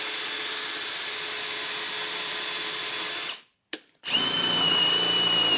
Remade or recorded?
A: recorded